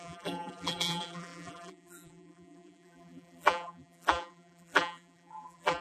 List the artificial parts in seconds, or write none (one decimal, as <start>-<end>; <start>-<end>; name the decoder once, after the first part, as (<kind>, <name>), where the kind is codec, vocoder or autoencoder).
0.0-5.8 (vocoder, BigVGAN v2)